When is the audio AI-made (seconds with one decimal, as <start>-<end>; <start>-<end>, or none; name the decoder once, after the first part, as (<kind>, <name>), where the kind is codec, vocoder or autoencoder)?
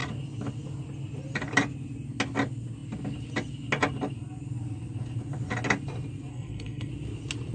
6.3-6.9 (codec, SNAC)